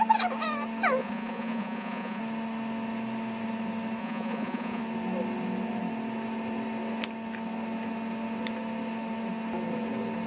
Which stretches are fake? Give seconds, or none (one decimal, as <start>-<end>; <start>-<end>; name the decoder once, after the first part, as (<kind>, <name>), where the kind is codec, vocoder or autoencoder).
1.0-2.2 (vocoder, Vocos); 4.0-4.8